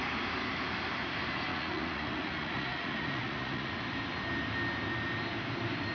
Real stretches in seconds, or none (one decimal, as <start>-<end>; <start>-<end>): 0.0-1.5; 3.8-5.9